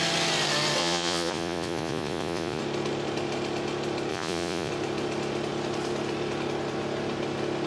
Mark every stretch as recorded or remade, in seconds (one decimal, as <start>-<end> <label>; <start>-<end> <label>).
0.0-0.8 recorded; 0.8-2.6 remade; 2.6-4.1 recorded; 4.1-4.7 remade; 4.7-7.7 recorded